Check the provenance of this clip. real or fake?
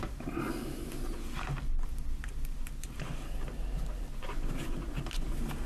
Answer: real